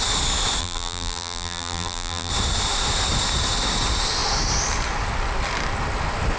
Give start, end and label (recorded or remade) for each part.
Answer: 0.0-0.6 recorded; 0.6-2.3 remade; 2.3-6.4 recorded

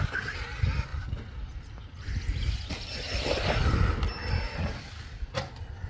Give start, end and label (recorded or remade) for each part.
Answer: 0.0-0.9 recorded; 0.9-4.4 remade; 4.4-5.9 recorded

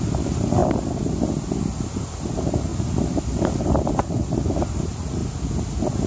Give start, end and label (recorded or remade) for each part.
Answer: 0.0-0.6 remade; 0.6-1.9 recorded; 1.9-2.7 remade; 2.7-4.1 recorded; 4.1-5.2 remade; 5.2-6.1 recorded

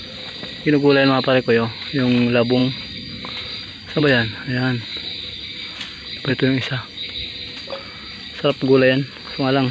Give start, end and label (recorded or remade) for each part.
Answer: 0.0-9.7 recorded